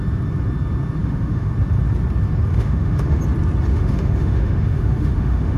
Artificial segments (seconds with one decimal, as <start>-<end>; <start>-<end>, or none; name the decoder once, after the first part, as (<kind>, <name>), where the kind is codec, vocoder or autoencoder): 1.0-1.5 (autoencoder, DAC-VAE); 2.5-3.2; 3.7-5.6

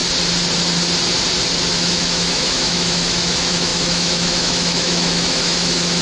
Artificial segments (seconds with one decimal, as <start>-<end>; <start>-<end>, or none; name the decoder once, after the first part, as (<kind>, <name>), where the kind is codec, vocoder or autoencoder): 1.7-6.0 (autoencoder, DAC-VAE)

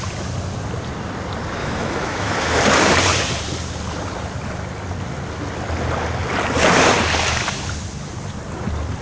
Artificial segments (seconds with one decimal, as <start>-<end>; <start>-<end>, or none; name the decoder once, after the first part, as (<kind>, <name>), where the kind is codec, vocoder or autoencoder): 1.6-2.6 (autoencoder, DAC-VAE)

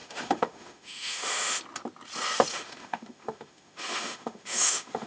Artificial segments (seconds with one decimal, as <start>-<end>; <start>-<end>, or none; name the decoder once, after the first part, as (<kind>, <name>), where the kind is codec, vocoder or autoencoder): 0.0-1.6 (autoencoder, DAC-VAE); 2.5-5.1

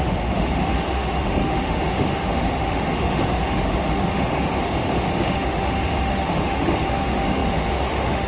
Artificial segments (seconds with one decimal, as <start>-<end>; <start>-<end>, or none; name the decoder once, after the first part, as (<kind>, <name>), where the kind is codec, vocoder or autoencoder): 0.0-8.3 (autoencoder, DAC-VAE)

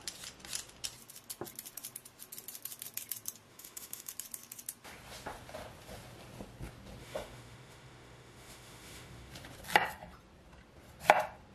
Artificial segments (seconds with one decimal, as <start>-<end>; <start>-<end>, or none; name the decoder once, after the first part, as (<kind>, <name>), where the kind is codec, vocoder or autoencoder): 3.5-4.1 (autoencoder, DAC-VAE); 7.0-9.3